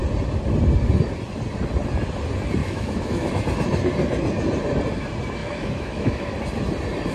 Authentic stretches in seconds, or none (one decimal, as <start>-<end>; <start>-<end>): 0.0-2.6; 3.3-5.4; 6.3-7.1